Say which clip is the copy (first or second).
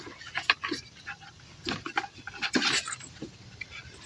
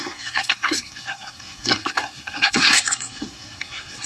second